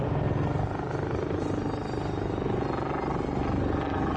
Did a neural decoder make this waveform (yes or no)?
no